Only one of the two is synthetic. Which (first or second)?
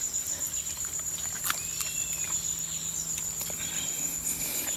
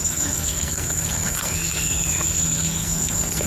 second